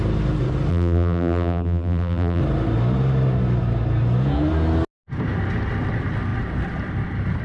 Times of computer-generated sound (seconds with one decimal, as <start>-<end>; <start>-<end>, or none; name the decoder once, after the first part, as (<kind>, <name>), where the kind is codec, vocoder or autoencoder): 0.7-2.4 (vocoder, BigVGAN v2)